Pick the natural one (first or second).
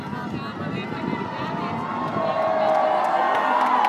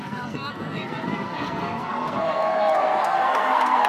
first